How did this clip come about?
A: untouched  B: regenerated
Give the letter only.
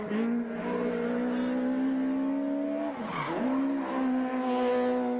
A